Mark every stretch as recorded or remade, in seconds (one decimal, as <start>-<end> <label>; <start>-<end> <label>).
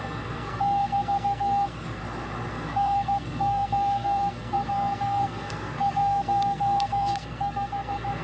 0.0-2.0 remade; 2.0-2.5 recorded; 2.5-8.2 remade